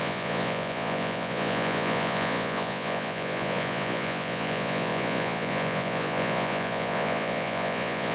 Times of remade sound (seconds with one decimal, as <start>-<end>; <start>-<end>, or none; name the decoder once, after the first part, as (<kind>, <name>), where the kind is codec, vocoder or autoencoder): 0.0-8.1 (vocoder, Vocos)